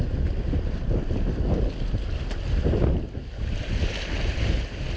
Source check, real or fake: real